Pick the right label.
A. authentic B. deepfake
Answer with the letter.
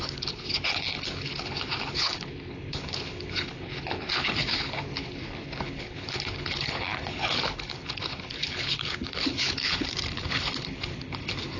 B